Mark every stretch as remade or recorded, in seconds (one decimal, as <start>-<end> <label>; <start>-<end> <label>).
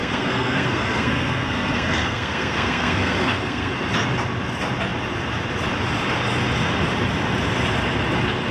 0.0-3.7 remade; 3.7-8.5 recorded